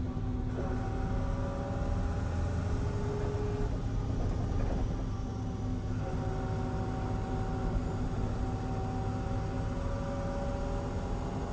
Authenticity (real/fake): real